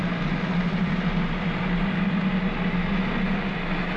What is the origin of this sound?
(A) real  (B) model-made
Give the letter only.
A